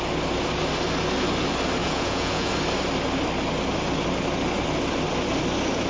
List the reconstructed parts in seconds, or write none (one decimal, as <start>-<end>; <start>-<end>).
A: 1.8-2.5